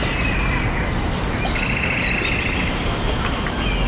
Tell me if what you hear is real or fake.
real